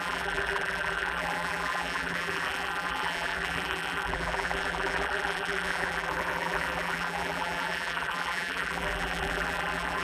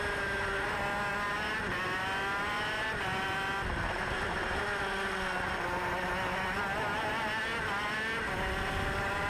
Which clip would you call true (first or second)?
second